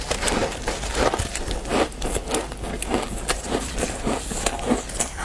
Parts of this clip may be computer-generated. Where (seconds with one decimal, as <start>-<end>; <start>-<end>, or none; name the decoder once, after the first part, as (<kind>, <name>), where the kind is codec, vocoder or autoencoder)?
0.0-0.4 (vocoder, BigVGAN v2); 3.5-5.2